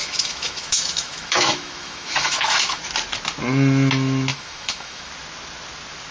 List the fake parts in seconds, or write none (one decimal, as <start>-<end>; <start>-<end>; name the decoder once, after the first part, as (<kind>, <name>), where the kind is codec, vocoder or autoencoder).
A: 0.0-2.8 (autoencoder, DAC-VAE); 4.3-5.1